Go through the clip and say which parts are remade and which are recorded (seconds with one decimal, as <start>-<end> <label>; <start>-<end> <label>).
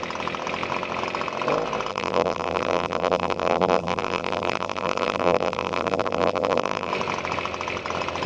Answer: 0.0-1.9 recorded; 1.9-6.9 remade; 6.9-8.3 recorded